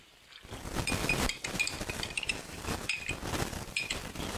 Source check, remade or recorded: remade